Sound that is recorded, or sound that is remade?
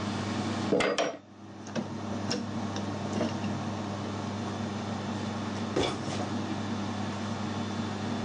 recorded